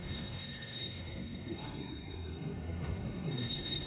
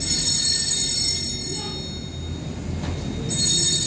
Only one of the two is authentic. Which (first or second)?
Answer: second